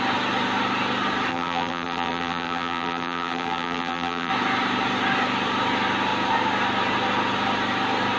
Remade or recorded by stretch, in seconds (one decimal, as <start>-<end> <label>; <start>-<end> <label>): 0.0-1.3 recorded; 1.3-4.3 remade; 4.3-8.2 recorded